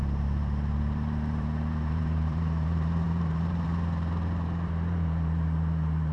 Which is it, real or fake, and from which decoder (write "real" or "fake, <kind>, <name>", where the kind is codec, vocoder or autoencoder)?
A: fake, vocoder, BigVGAN v2